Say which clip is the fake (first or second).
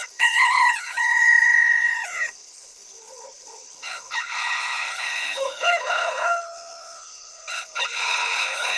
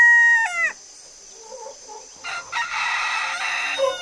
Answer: first